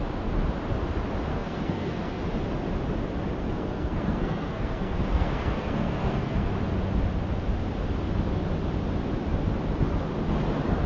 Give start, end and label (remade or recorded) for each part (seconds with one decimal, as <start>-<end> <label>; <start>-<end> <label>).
0.0-1.3 recorded; 1.3-2.2 remade; 2.2-3.4 recorded; 3.4-6.5 remade; 6.5-10.9 recorded